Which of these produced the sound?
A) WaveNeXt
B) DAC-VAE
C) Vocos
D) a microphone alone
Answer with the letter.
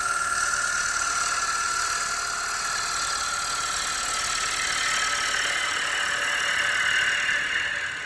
D